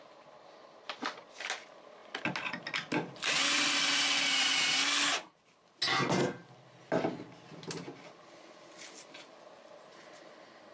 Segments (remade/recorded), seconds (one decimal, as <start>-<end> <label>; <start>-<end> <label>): 0.0-10.7 recorded